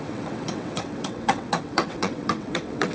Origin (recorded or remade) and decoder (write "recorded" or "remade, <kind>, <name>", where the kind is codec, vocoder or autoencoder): remade, vocoder, WaveNeXt